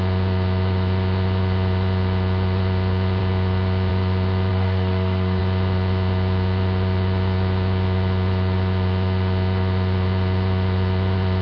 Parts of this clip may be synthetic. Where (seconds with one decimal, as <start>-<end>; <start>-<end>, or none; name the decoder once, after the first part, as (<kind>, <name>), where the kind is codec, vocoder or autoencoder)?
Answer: 4.5-5.4 (codec, SNAC)